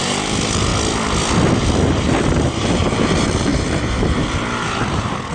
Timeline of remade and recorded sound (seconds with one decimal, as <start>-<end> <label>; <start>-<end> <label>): 0.0-0.7 remade; 0.7-1.9 recorded; 1.9-5.3 remade